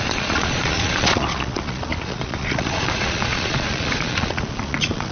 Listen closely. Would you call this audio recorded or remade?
remade